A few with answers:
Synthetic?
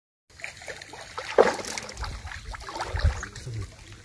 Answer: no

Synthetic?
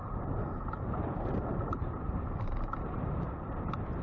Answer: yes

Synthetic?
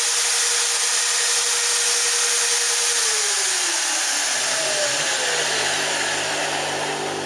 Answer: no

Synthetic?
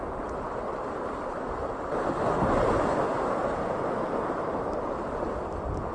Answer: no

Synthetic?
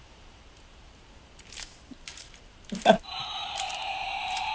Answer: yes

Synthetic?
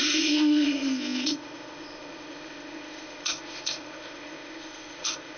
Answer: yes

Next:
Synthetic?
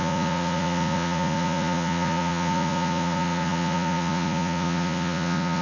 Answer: yes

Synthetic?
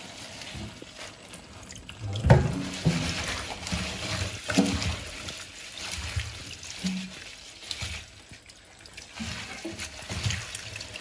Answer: no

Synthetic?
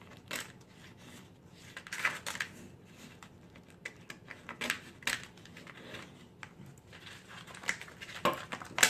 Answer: no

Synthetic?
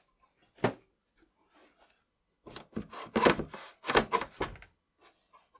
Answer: no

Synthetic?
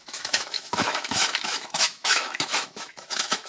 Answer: yes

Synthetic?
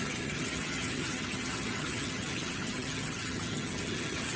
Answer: yes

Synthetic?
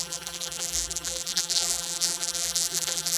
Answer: yes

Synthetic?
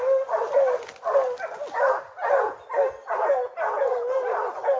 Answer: no